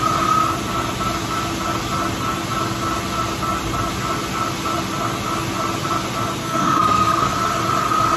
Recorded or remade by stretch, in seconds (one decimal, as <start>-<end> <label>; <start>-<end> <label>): 0.0-6.4 recorded; 6.4-7.3 remade; 7.3-8.2 recorded